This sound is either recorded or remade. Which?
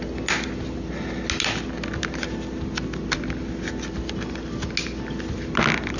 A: recorded